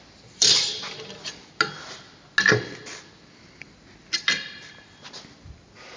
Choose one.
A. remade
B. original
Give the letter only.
B